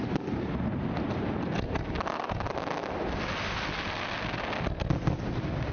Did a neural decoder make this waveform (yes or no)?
no